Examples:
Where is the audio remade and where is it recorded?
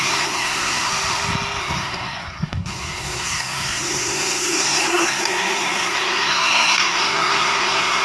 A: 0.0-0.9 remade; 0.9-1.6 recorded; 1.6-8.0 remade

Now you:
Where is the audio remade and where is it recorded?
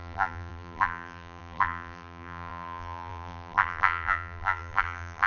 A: 0.0-5.3 remade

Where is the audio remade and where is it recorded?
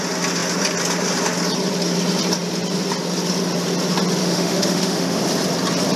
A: 0.0-4.2 recorded; 4.2-5.2 remade; 5.2-6.0 recorded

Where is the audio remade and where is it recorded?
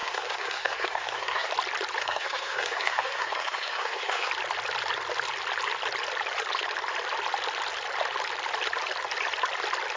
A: 0.0-1.5 remade; 1.5-2.0 recorded; 2.0-4.3 remade; 4.3-10.0 recorded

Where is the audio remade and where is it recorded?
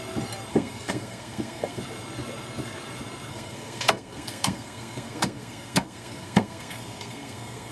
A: 0.0-0.5 recorded; 0.5-1.8 remade; 1.8-3.3 recorded; 3.3-7.7 remade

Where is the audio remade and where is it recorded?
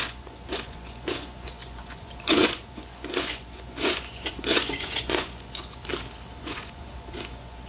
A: 0.0-5.8 remade; 5.8-6.4 recorded; 6.4-7.7 remade